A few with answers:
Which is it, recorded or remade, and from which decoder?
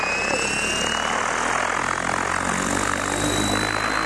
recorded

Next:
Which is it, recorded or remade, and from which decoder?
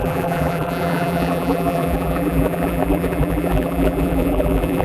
remade, vocoder, BigVGAN v2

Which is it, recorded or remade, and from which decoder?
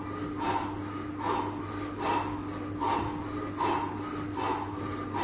recorded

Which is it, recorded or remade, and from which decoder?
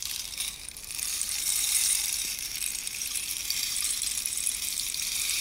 remade, vocoder, BigVGAN v2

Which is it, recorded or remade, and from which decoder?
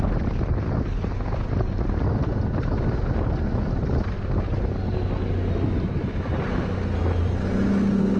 recorded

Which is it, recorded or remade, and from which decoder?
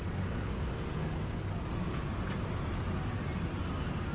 recorded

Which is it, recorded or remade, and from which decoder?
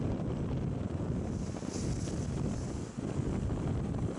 recorded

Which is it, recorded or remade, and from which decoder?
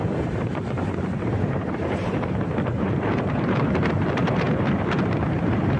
remade, vocoder, BigVGAN v2